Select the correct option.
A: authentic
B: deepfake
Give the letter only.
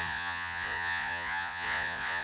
B